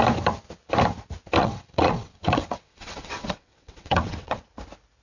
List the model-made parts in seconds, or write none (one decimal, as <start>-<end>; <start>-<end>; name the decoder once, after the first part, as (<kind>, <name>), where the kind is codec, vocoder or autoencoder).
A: 1.4-4.4 (vocoder, WaveNeXt)